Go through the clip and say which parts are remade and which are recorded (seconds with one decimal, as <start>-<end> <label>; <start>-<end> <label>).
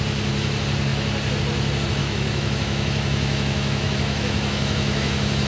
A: 0.0-2.0 recorded; 2.0-5.5 remade